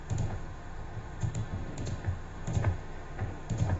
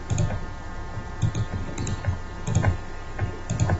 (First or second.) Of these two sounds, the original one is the second